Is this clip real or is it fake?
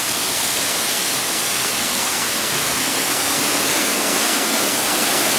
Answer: fake